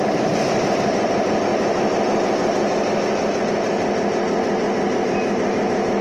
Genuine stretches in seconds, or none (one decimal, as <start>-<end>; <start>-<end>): 0.0-6.0